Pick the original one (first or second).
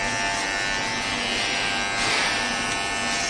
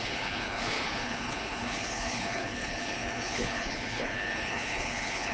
first